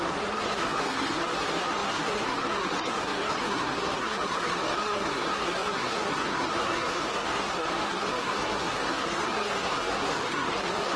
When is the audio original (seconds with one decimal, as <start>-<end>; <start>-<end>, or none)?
none